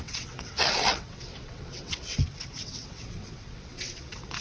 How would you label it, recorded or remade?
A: remade